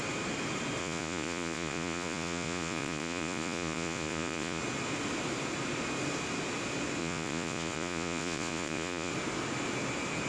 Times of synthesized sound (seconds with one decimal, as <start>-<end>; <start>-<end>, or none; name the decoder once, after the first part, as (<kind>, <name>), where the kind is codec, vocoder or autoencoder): 0.8-4.6 (vocoder, Vocos); 7.0-9.1